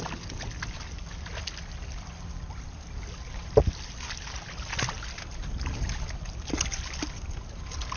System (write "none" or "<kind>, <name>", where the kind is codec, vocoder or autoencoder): none